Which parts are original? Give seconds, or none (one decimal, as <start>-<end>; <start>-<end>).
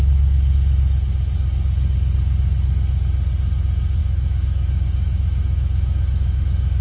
0.0-4.0